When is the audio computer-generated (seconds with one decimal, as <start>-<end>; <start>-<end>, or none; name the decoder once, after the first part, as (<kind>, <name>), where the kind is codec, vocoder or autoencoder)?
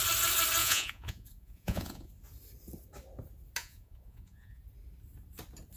0.6-2.1 (vocoder, Vocos); 3.6-4.6